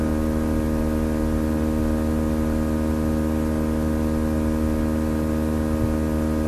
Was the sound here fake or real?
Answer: real